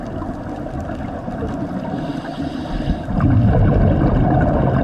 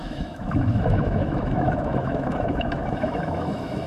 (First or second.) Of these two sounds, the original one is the first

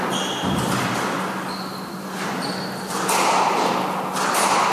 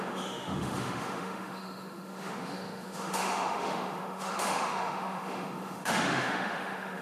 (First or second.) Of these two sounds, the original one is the first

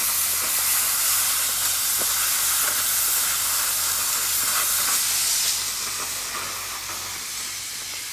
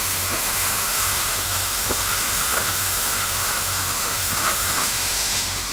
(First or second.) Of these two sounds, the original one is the first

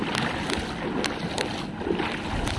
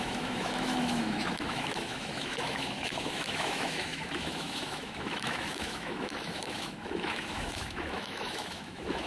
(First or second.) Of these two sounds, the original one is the first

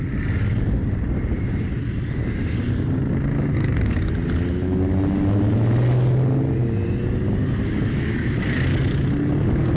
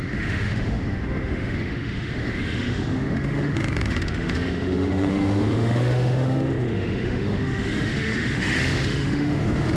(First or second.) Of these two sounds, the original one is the first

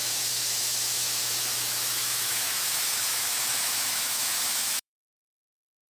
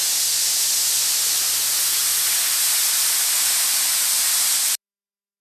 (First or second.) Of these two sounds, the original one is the second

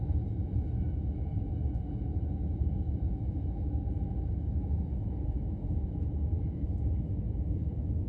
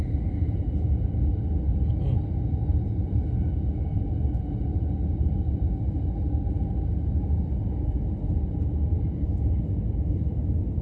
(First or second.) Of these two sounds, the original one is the second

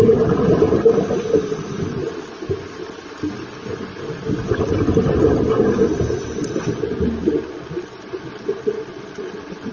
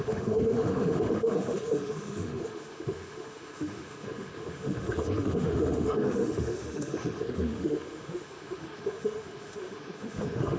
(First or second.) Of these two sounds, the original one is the first